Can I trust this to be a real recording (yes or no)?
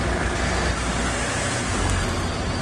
yes